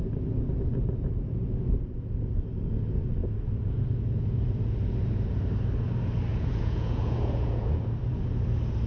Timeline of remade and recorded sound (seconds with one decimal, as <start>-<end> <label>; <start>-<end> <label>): 0.0-6.3 recorded; 6.3-7.8 remade; 7.8-8.9 recorded